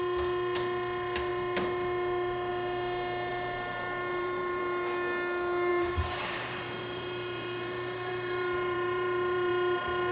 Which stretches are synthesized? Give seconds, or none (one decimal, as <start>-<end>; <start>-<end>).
3.3-4.6; 5.7-9.5